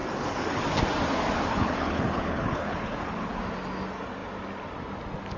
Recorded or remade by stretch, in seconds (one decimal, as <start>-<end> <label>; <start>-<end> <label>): 0.0-1.5 recorded; 1.5-3.4 remade; 3.4-5.4 recorded